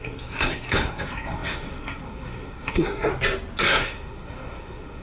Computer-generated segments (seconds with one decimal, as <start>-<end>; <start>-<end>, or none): 0.0-3.1; 3.6-5.0